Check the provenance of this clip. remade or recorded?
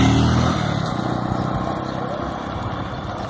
recorded